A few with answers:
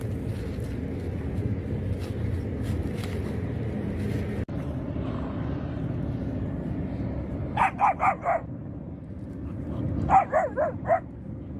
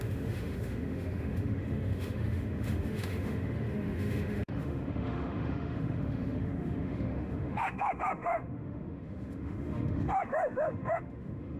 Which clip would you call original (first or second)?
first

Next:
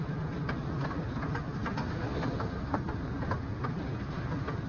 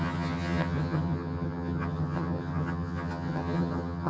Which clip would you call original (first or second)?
first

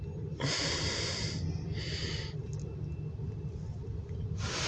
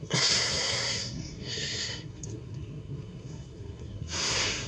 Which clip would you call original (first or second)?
first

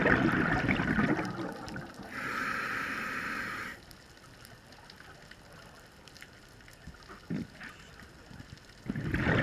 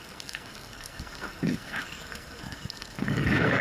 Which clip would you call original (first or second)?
first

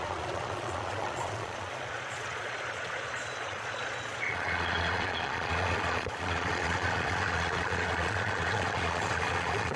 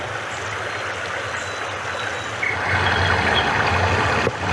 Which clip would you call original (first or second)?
second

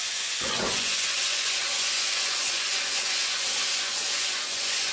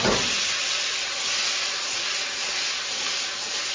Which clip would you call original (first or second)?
second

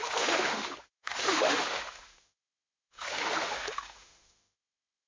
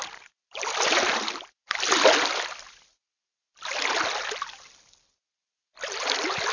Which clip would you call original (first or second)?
second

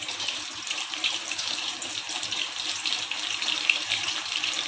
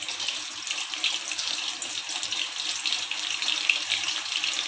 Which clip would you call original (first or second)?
second